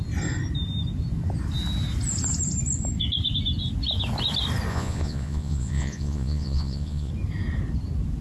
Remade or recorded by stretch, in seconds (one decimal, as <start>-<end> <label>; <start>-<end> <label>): 0.0-4.7 recorded; 4.7-7.1 remade; 7.1-8.2 recorded